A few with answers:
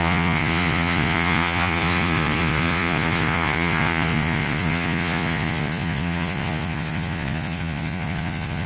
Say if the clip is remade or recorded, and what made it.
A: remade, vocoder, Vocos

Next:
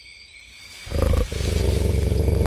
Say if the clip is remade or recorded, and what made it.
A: recorded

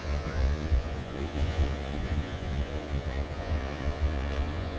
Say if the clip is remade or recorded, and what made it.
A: remade, vocoder, Vocos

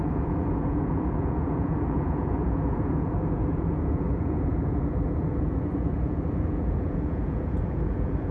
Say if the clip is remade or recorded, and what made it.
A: remade, vocoder, Vocos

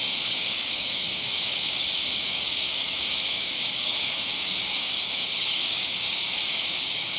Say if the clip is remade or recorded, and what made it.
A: remade, codec, DAC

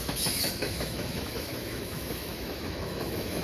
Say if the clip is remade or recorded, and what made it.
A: remade, autoencoder, DAC-VAE